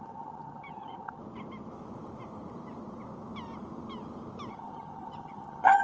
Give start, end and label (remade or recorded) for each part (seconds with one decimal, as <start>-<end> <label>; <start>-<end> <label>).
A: 0.0-1.2 remade; 1.2-4.5 recorded; 4.5-5.8 remade